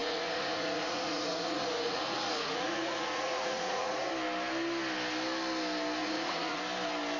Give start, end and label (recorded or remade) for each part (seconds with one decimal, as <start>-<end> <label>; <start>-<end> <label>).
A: 0.0-4.1 remade; 4.1-6.0 recorded; 6.0-6.6 remade; 6.6-7.2 recorded

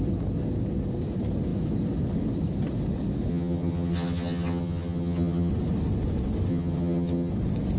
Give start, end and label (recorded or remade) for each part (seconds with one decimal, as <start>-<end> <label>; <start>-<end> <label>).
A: 0.0-3.3 recorded; 3.3-5.5 remade; 5.5-6.5 recorded; 6.5-7.3 remade; 7.3-7.8 recorded

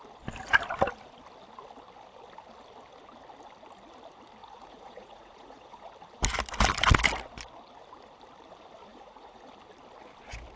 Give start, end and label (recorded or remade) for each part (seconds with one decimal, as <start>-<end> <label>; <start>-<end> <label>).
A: 0.0-4.4 recorded; 4.4-5.9 remade; 5.9-8.9 recorded; 8.9-9.5 remade; 9.5-10.6 recorded

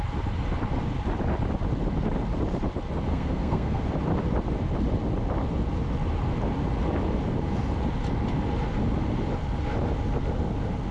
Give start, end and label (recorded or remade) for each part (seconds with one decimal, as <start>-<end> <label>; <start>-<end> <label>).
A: 0.0-3.1 recorded; 3.1-3.8 remade; 3.8-10.9 recorded

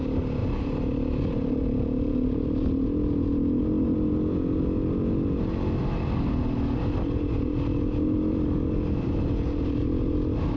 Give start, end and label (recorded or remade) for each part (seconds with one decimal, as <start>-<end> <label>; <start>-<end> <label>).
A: 0.0-10.6 recorded

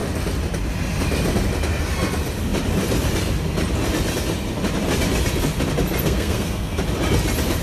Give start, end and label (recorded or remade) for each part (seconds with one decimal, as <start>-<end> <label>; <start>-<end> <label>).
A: 0.0-6.0 recorded; 6.0-6.8 remade; 6.8-7.6 recorded

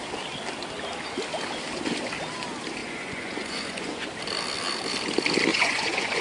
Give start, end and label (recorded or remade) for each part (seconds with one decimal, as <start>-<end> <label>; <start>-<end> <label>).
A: 0.0-2.8 recorded; 2.8-4.1 remade; 4.1-5.5 recorded; 5.5-6.2 remade